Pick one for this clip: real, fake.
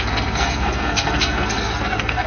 fake